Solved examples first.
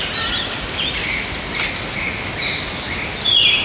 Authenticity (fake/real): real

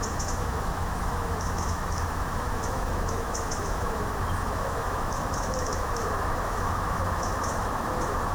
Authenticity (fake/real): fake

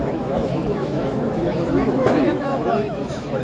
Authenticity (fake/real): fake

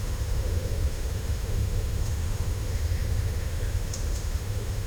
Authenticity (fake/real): fake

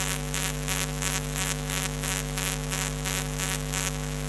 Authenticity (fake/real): fake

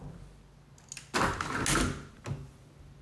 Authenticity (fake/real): real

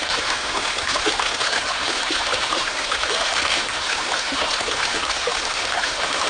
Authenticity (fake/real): fake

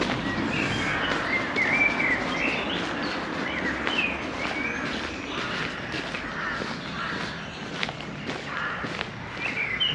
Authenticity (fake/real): real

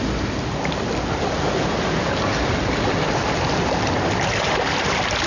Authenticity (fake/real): real